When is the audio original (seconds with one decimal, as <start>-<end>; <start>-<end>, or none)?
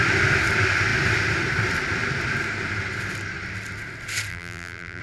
0.0-4.3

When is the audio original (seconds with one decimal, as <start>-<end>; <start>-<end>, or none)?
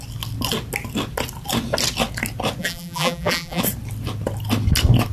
0.0-2.6; 3.6-5.1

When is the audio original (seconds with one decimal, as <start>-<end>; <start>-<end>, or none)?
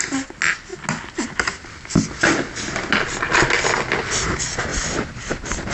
0.0-5.7